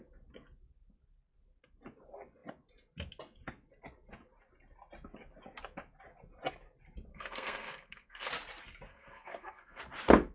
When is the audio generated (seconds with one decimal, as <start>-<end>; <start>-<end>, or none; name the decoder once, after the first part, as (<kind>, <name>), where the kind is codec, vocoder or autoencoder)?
7.1-8.3 (codec, SNAC); 8.9-9.8